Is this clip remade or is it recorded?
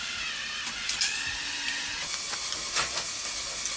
recorded